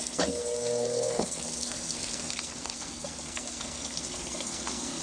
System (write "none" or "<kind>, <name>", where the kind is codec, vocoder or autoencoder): codec, SNAC